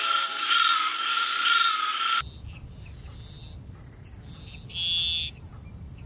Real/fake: real